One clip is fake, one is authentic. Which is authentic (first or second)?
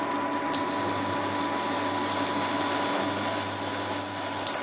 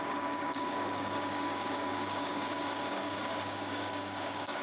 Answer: first